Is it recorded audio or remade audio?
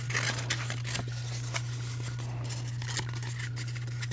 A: recorded